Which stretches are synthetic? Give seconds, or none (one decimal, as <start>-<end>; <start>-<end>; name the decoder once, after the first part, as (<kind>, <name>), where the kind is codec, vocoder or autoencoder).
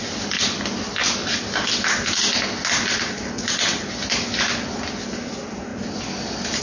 none